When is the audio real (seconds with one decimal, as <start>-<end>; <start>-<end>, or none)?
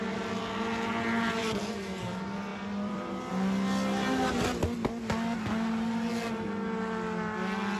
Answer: 0.0-1.4; 2.0-2.5; 3.3-7.8